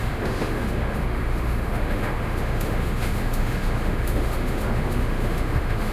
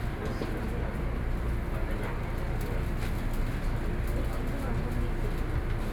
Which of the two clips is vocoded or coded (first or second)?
first